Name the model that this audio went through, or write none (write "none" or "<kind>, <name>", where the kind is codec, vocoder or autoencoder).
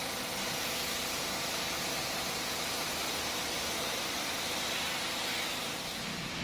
vocoder, BigVGAN v2